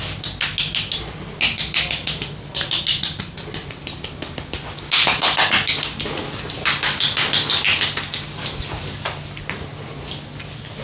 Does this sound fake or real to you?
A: real